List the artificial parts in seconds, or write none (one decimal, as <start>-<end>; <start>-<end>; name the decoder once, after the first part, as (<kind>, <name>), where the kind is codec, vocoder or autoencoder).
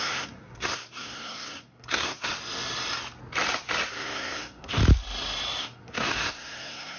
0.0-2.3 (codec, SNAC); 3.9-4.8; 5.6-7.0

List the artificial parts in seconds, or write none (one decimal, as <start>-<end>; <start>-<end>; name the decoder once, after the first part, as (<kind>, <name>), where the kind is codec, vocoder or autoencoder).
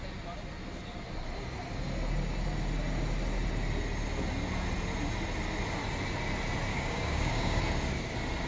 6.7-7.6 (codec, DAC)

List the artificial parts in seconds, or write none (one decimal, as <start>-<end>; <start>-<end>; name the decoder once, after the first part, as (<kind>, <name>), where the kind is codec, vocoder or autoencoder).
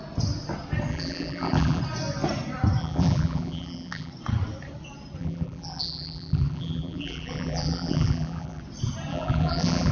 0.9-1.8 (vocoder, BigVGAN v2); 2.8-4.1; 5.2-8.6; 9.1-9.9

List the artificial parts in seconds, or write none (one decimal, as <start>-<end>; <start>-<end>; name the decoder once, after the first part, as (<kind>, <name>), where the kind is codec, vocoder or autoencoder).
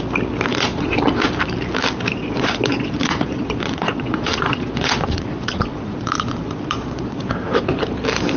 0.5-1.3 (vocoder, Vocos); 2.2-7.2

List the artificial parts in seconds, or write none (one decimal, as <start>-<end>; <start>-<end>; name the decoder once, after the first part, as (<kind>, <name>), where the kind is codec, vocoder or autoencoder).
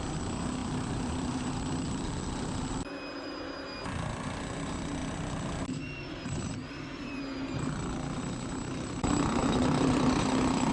0.6-2.6 (vocoder, BigVGAN v2); 5.0-7.2; 9.4-10.7